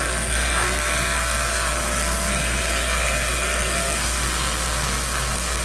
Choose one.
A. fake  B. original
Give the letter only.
A